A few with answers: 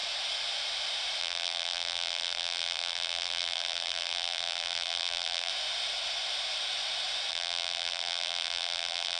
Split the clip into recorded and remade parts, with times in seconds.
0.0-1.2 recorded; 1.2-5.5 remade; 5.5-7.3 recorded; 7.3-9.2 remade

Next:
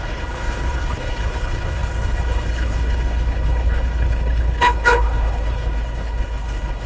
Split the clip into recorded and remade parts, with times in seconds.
0.0-6.9 remade